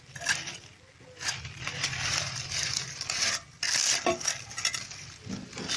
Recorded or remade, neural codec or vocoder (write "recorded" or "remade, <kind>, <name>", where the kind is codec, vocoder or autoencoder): recorded